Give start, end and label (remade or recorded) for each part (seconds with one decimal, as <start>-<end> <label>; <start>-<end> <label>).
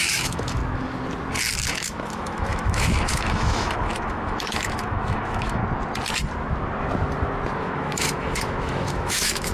0.0-0.6 remade; 0.6-1.7 recorded; 1.7-5.6 remade; 5.6-7.6 recorded; 7.6-9.5 remade